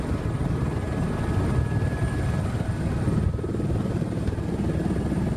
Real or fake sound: real